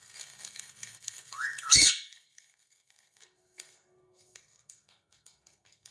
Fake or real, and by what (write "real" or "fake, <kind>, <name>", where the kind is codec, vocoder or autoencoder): fake, codec, SNAC